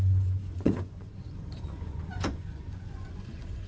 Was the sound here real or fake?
fake